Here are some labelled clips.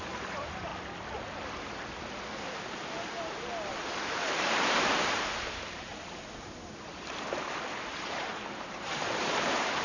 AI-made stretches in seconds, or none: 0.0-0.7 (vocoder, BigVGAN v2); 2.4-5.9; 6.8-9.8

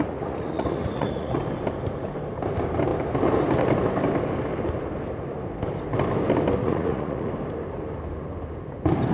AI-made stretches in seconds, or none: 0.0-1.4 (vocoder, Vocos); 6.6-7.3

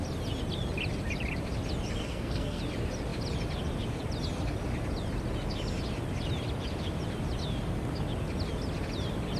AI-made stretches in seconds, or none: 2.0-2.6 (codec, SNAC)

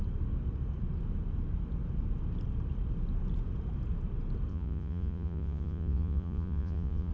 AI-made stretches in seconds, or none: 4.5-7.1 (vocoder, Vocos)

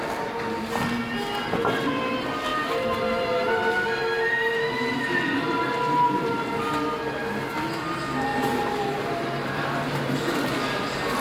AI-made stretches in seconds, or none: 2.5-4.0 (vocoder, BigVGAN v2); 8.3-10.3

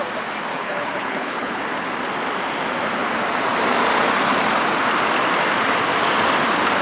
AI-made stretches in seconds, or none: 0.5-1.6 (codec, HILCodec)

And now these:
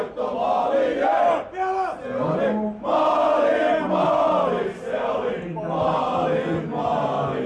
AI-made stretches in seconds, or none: none

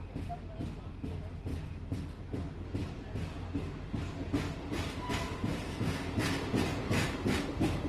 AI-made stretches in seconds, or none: none